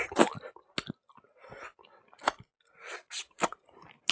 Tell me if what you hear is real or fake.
real